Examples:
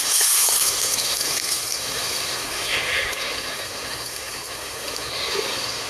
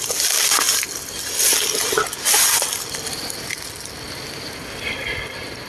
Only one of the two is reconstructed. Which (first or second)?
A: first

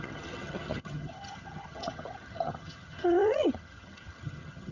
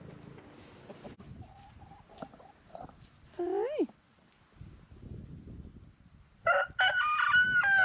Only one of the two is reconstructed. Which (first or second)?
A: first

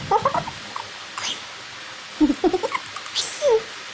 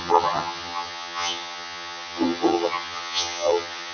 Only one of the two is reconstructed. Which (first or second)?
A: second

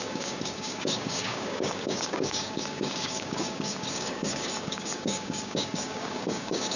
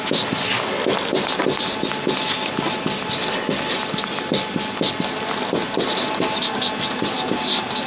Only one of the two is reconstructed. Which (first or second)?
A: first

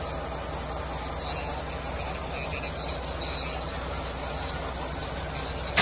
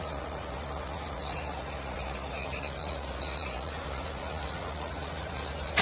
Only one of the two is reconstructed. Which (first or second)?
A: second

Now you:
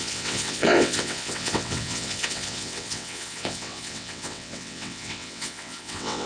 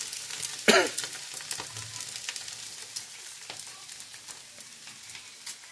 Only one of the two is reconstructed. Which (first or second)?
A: first